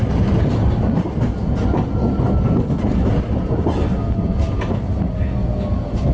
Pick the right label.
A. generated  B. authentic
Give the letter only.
B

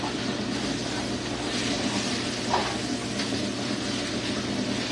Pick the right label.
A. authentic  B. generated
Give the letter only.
A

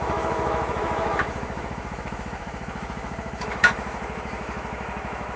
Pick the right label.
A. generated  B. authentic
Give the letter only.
A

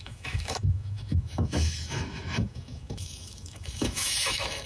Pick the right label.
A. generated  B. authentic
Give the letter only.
A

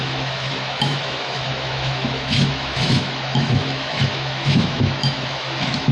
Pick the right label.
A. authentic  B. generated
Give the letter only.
B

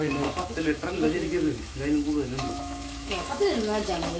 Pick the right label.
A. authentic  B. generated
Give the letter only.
B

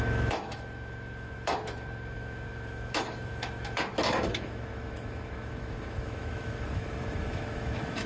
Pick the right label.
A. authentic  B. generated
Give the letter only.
B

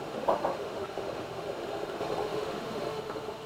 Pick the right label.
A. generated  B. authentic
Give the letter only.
A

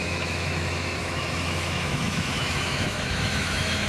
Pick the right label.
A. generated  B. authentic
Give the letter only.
A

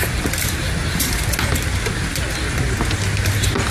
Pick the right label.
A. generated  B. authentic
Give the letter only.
B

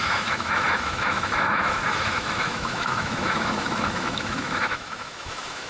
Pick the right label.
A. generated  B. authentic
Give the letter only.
A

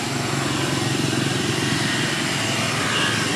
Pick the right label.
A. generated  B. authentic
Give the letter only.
B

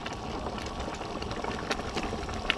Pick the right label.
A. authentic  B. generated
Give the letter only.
A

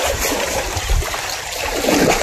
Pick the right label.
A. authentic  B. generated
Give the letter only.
A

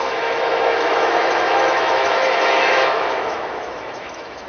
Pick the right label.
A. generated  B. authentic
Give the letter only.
A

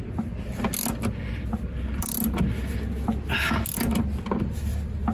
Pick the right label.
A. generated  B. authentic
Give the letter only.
B